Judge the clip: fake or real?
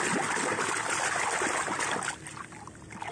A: real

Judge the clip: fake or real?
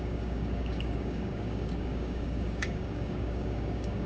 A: fake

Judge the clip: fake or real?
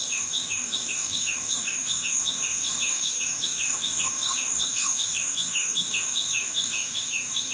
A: fake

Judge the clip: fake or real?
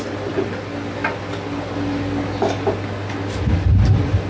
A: real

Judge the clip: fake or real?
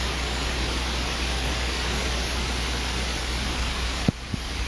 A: fake